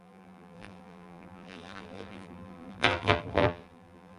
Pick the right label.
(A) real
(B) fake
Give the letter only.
B